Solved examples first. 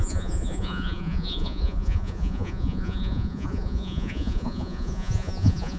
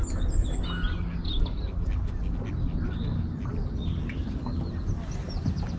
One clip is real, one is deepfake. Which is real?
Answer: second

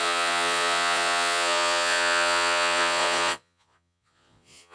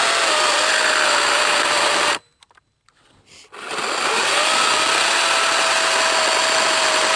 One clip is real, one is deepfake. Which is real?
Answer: second